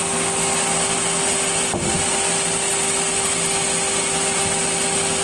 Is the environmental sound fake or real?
real